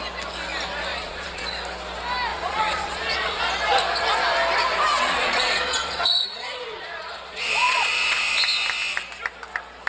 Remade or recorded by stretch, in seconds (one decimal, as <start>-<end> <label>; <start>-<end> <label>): 0.0-0.9 recorded; 0.9-1.4 remade; 1.4-2.3 recorded; 2.3-3.4 remade; 3.4-4.9 recorded; 4.9-8.3 remade; 8.3-9.9 recorded